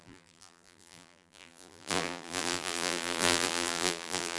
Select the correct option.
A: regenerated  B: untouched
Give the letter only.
A